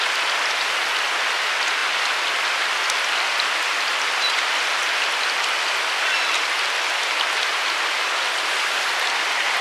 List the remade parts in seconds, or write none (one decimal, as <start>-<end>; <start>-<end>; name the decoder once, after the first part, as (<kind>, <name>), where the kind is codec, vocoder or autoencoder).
none